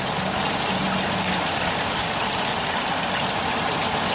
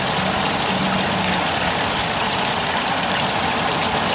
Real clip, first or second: second